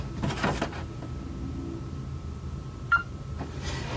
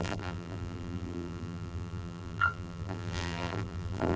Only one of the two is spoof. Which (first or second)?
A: second